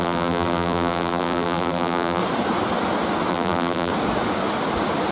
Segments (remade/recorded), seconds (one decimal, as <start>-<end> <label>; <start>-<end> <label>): 0.0-2.2 remade; 2.2-3.3 recorded; 3.3-3.9 remade; 3.9-5.1 recorded